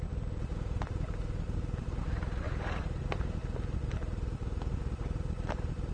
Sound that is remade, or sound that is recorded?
recorded